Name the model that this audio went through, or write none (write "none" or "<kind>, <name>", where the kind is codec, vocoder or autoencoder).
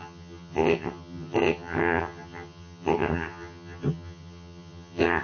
vocoder, HiFi-GAN